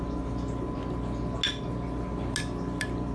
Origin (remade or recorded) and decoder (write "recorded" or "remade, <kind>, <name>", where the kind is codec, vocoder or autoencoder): recorded